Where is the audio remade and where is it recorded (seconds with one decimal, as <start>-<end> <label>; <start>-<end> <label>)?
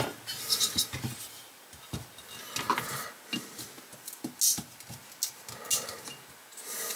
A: 0.0-7.0 recorded